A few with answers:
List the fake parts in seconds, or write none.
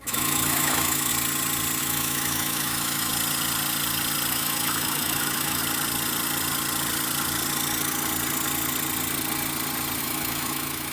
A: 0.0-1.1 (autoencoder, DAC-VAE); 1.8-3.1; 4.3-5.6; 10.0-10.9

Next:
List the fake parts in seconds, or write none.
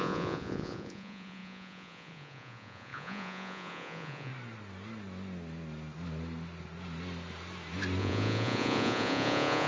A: 0.0-4.3 (vocoder, Vocos); 8.0-9.7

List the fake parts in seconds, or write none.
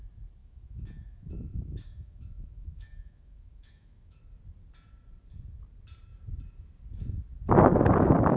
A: 0.4-4.2 (autoencoder, DAC-VAE)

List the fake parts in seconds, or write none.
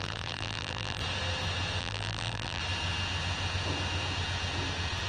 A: 0.0-1.0 (vocoder, BigVGAN v2); 1.8-2.6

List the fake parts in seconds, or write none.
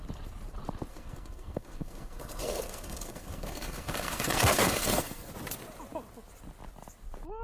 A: 0.9-5.3 (codec, SNAC)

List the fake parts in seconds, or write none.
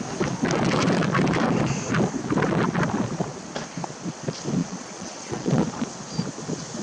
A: 4.6-5.6 (vocoder, Vocos)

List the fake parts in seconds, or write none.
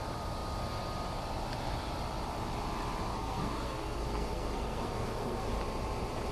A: 3.1-5.5 (codec, SNAC)